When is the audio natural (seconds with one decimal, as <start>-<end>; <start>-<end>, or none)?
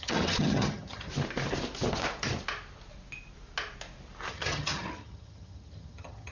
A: 1.1-4.3